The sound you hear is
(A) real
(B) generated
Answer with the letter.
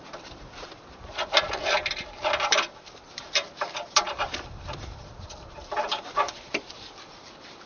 B